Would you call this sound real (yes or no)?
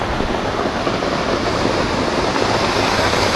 yes